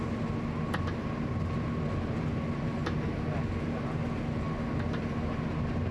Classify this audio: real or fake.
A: real